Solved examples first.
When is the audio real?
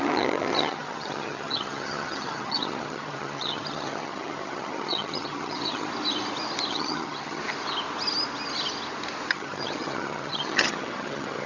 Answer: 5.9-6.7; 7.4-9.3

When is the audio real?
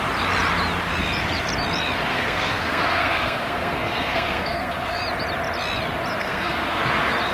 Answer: 0.0-2.1; 5.0-6.2; 6.8-7.3